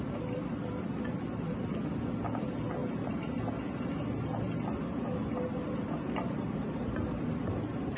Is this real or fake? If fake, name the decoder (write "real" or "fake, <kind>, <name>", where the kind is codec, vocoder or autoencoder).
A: real